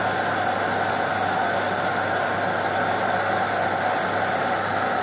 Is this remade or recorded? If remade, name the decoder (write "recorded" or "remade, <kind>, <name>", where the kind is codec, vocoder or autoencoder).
recorded